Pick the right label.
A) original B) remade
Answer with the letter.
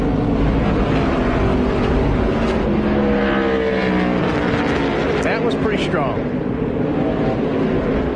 A